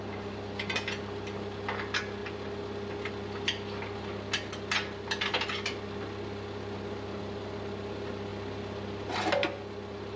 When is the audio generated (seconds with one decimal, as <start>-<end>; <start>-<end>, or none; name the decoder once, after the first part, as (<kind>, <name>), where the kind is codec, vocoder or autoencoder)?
none